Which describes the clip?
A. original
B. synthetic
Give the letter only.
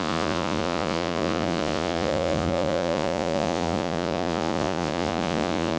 B